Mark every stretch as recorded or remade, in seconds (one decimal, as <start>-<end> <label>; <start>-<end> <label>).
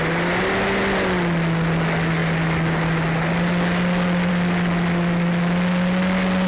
0.0-6.5 recorded